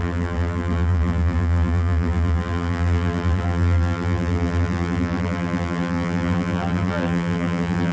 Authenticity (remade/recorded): remade